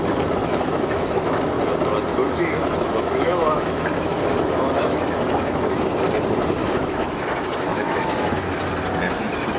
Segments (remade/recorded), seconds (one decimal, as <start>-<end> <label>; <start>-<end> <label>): 0.0-0.4 recorded; 0.4-1.4 remade; 1.4-2.1 recorded; 2.1-5.8 remade; 5.8-6.6 recorded; 6.6-8.6 remade; 8.6-9.6 recorded